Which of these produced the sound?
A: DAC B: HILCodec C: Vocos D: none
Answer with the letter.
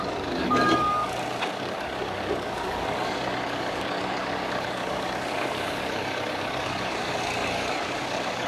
A